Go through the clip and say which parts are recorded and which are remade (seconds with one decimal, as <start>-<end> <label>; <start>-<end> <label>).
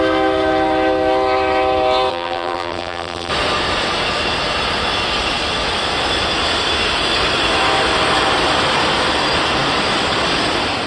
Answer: 0.0-2.1 recorded; 2.1-3.3 remade; 3.3-10.9 recorded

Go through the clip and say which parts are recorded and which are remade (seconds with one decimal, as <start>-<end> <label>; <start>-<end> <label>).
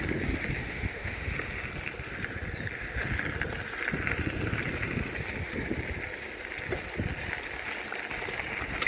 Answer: 0.0-0.6 recorded; 0.6-1.3 remade; 1.3-8.9 recorded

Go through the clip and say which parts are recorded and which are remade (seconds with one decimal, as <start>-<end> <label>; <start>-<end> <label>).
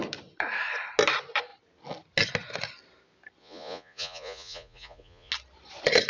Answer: 0.0-3.4 recorded; 3.4-5.3 remade; 5.3-6.1 recorded